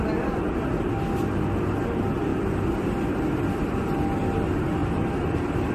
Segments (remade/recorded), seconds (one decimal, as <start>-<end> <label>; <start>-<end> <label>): 0.0-4.8 recorded; 4.8-5.7 remade